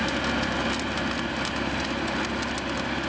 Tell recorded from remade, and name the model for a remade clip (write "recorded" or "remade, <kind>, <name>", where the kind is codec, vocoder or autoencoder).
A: recorded